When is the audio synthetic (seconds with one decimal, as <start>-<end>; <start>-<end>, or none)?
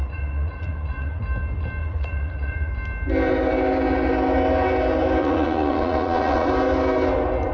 0.0-1.2; 1.8-2.7; 5.2-6.5